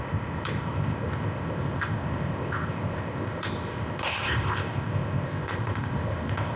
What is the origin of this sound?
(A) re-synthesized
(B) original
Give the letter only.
A